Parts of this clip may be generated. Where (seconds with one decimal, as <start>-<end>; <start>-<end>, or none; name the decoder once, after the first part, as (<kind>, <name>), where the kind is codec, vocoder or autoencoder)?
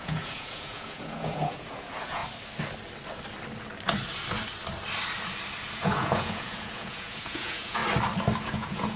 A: 0.0-2.2 (vocoder, Vocos); 5.8-7.8; 8.4-9.0